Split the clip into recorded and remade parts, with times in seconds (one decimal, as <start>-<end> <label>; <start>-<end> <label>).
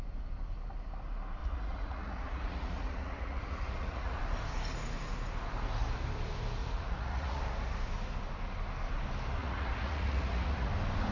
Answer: 0.0-1.4 recorded; 1.4-4.2 remade; 4.2-6.6 recorded; 6.6-7.4 remade; 7.4-9.4 recorded; 9.4-10.7 remade; 10.7-11.1 recorded